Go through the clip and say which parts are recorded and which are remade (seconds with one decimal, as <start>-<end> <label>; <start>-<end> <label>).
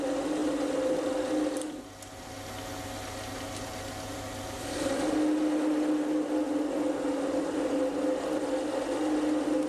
0.0-9.7 recorded